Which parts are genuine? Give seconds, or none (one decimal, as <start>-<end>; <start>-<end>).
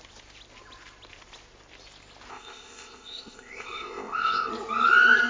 0.0-2.3; 4.5-5.3